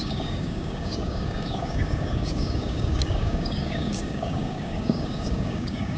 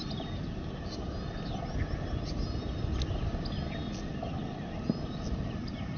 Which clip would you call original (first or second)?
second